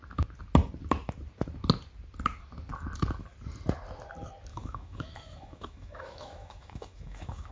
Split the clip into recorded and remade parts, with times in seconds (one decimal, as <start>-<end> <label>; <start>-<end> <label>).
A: 0.0-4.5 recorded; 4.5-7.5 remade